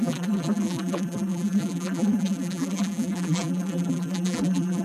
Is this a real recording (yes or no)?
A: no